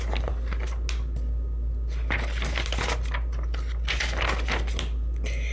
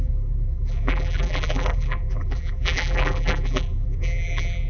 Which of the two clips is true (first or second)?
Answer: first